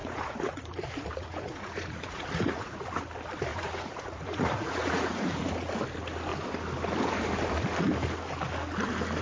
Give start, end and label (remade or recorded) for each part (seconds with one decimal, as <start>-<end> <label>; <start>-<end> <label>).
0.0-2.8 remade; 2.8-3.5 recorded; 3.5-5.7 remade; 5.7-9.2 recorded